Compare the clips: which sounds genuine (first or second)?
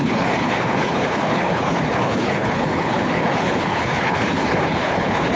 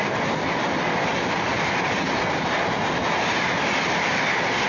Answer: second